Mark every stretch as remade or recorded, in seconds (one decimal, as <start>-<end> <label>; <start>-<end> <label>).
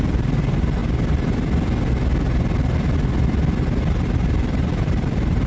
0.0-0.8 remade; 0.8-3.9 recorded; 3.9-5.5 remade